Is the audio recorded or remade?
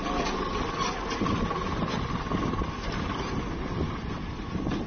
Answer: recorded